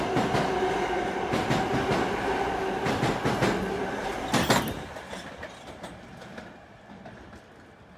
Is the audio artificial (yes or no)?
no